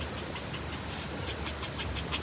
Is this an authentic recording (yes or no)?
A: yes